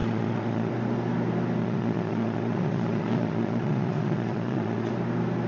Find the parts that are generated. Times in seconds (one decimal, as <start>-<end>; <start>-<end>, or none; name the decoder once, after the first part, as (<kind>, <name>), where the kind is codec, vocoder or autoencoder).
0.0-0.7 (vocoder, Vocos); 1.6-4.9